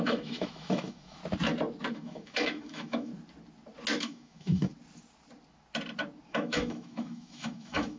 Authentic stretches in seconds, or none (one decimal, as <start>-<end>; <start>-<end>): 1.2-1.9; 3.1-4.0; 4.7-6.3

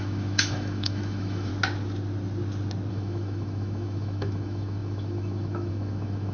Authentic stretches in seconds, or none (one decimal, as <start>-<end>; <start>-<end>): 1.5-2.9

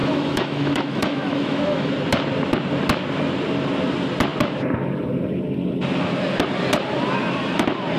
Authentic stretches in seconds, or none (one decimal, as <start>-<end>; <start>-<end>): 1.9-8.0

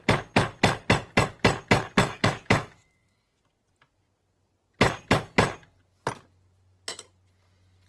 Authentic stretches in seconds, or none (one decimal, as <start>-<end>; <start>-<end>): 0.0-2.0; 3.4-7.9

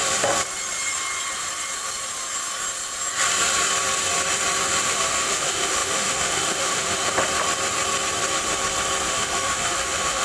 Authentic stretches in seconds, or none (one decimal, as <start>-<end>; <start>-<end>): 0.0-4.8; 7.0-9.1

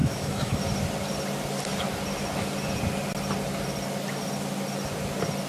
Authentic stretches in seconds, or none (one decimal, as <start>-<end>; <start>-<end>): 0.6-5.5